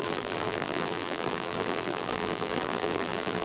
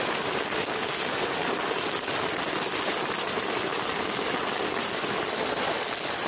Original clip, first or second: second